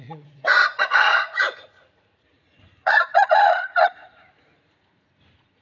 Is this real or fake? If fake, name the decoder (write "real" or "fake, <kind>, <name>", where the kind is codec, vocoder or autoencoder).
fake, vocoder, Vocos